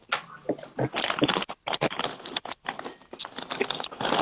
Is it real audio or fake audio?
real